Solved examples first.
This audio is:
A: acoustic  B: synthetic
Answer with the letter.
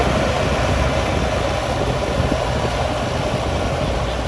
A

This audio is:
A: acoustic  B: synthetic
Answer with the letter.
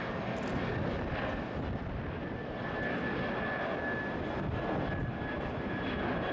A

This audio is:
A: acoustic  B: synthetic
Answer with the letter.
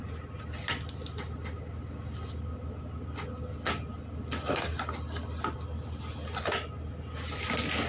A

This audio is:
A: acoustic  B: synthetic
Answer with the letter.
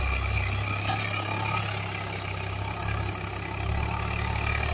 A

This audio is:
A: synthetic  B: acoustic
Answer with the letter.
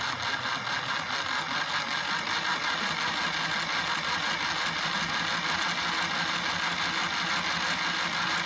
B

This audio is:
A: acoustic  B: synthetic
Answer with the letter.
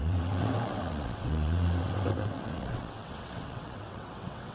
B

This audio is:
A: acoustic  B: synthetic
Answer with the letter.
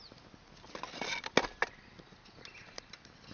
A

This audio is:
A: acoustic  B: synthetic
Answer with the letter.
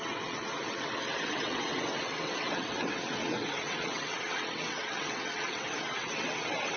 B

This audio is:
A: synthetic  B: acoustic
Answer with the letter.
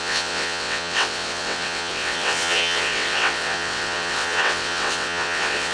A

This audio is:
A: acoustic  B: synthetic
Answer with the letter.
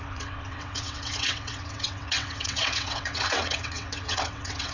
B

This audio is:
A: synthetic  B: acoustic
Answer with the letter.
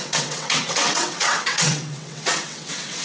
A